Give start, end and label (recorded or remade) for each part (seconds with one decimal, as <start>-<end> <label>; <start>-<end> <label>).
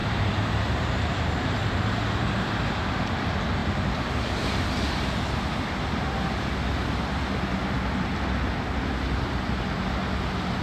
0.0-2.2 remade; 2.2-3.6 recorded; 3.6-4.9 remade; 4.9-10.6 recorded